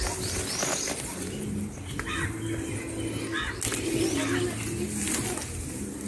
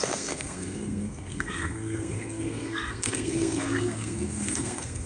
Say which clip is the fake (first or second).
second